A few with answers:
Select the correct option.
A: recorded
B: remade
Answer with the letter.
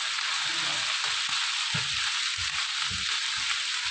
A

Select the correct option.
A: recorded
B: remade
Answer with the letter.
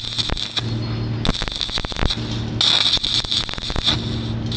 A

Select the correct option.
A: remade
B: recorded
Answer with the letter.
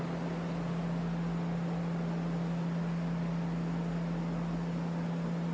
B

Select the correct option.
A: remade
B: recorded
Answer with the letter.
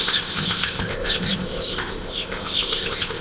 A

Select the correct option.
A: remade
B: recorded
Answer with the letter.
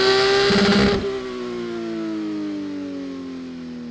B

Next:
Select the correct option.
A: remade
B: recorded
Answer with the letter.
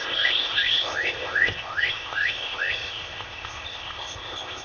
A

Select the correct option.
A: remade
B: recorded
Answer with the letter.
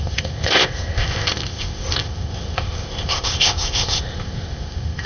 A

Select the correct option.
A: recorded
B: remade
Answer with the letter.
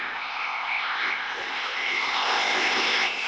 B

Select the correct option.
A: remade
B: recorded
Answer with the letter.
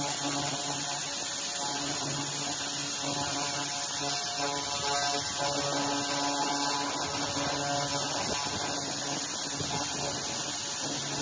B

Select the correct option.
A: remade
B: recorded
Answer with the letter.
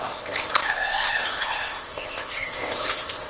A